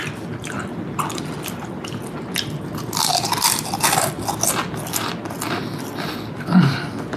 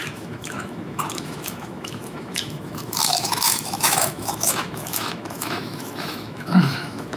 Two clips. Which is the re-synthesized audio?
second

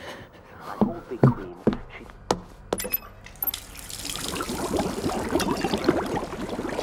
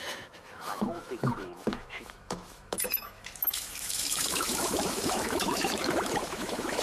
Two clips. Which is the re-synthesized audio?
second